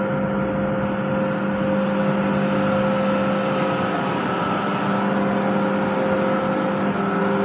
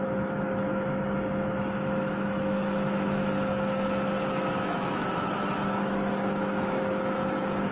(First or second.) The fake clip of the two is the second